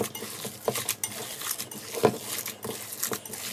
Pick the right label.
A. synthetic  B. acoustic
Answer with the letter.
B